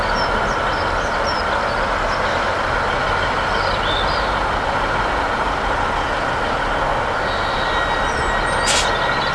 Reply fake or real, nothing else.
real